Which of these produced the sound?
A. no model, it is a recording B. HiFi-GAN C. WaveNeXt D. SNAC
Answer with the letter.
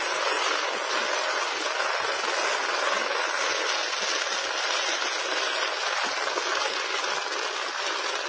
A